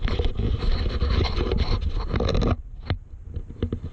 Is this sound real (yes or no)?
yes